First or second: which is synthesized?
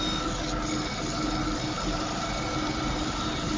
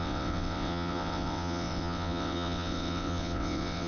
second